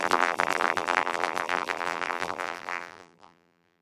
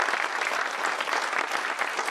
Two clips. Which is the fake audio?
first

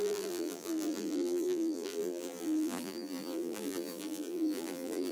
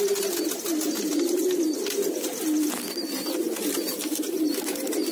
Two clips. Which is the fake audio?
first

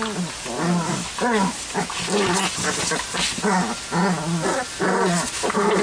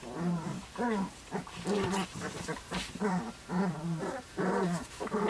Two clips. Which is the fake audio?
second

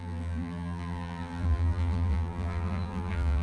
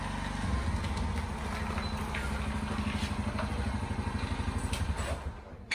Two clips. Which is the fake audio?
first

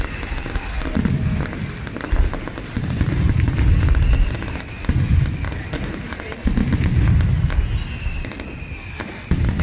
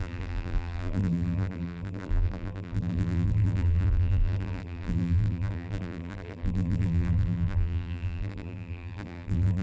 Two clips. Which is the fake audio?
second